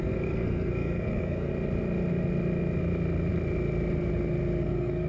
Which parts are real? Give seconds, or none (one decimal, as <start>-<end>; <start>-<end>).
1.5-4.6